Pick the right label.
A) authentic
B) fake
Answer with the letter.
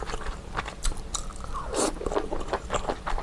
A